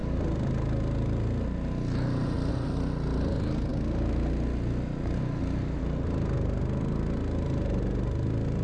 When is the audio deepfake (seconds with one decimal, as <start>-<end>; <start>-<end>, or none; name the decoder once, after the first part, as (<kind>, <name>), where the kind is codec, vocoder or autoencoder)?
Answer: none

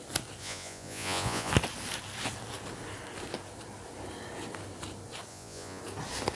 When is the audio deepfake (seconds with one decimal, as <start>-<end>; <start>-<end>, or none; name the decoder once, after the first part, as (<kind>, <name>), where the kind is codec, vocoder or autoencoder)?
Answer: 0.4-1.5 (vocoder, Vocos); 5.3-5.8

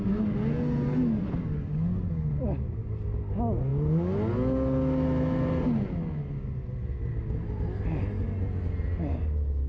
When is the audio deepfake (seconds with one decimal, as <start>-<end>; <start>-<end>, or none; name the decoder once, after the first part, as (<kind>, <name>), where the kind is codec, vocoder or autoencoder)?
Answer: none

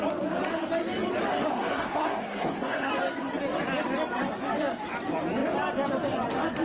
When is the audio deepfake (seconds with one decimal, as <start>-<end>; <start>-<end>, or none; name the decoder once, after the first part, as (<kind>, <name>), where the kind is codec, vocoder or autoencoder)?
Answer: 1.3-2.9 (codec, SNAC)

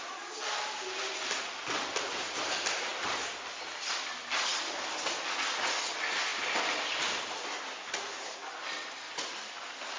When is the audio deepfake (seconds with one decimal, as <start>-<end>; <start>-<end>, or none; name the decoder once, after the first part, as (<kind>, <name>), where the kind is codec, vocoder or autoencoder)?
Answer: none

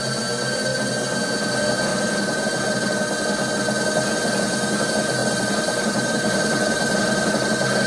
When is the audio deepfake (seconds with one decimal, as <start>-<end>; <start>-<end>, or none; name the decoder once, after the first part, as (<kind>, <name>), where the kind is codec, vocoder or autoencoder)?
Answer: 1.9-2.5 (vocoder, BigVGAN v2); 5.2-7.3

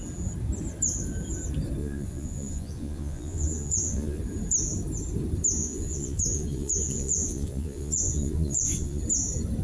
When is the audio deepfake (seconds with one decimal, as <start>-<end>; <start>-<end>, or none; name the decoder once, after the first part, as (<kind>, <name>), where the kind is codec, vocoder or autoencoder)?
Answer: 1.8-4.2 (vocoder, Vocos); 5.6-9.0